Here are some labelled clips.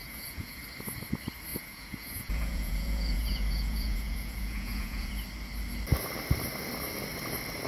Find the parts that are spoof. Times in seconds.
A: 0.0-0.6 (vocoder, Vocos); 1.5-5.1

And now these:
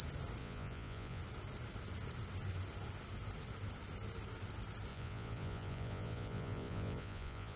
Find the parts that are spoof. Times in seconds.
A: 0.4-1.2 (vocoder, Vocos); 4.9-7.6

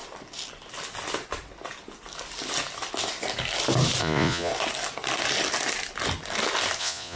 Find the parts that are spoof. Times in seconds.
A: 4.0-4.5 (vocoder, Vocos); 6.8-7.2

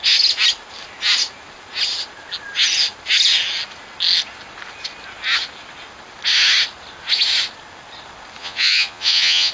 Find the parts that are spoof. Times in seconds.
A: 8.4-9.5 (vocoder, Vocos)